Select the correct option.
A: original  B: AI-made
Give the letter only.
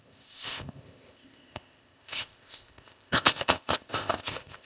B